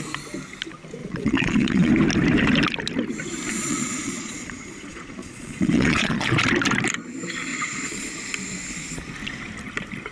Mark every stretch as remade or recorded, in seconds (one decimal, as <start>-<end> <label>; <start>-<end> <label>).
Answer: 0.0-1.0 recorded; 1.0-1.9 remade; 1.9-3.5 recorded; 3.5-6.4 remade; 6.4-7.5 recorded; 7.5-8.1 remade; 8.1-10.1 recorded